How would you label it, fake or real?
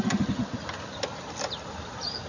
real